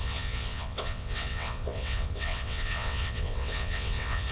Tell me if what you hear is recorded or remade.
remade